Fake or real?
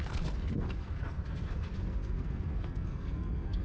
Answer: fake